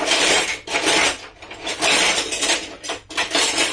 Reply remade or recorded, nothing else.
remade